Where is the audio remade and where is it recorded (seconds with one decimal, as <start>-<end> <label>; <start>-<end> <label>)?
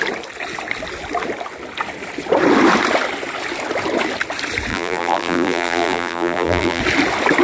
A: 0.0-4.7 recorded; 4.7-6.8 remade; 6.8-7.4 recorded